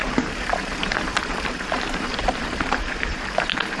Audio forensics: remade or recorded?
remade